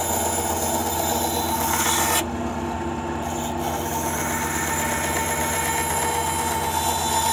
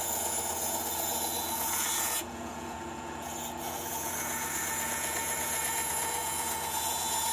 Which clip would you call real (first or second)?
first